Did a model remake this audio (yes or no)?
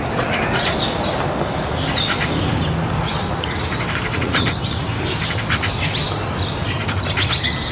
no